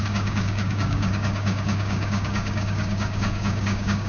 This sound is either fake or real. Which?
fake